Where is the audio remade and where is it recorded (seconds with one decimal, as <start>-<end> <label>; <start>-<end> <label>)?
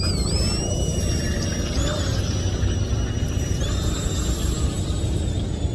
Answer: 0.0-5.7 recorded